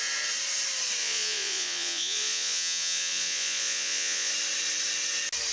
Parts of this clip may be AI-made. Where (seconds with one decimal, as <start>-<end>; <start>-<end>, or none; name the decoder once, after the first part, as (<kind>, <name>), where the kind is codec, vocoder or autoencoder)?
1.0-4.3 (vocoder, Vocos)